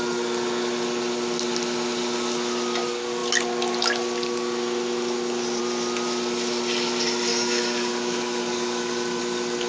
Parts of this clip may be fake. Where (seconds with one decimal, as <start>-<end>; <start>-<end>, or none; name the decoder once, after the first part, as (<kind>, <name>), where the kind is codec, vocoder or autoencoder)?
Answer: 7.3-9.2 (codec, DAC)